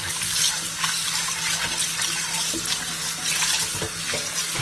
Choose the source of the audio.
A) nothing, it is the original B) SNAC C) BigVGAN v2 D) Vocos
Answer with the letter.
A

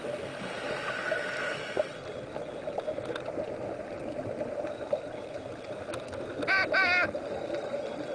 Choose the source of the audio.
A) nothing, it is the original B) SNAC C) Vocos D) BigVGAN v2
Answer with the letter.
A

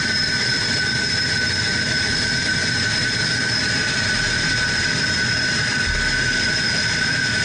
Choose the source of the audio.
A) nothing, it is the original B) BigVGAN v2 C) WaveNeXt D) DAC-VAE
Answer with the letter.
B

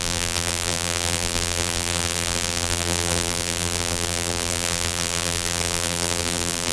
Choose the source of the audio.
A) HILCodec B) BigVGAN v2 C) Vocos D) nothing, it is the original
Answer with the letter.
B